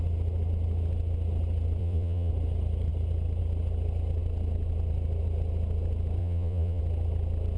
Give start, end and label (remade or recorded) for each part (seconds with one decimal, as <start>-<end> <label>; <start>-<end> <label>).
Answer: 0.0-1.8 recorded; 1.8-2.3 remade; 2.3-6.2 recorded; 6.2-6.8 remade; 6.8-7.6 recorded